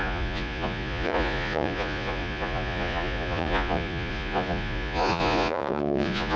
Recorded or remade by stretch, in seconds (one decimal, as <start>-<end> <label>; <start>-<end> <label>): 0.0-6.4 remade